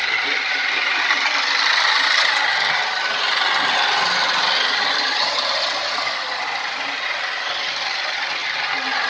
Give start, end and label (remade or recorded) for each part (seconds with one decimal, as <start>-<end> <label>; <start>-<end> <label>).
0.0-9.1 recorded